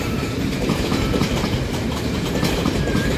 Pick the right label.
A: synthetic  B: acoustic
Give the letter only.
A